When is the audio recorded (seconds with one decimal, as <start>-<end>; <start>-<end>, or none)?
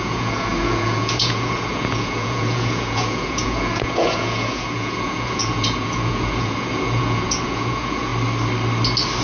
8.1-9.2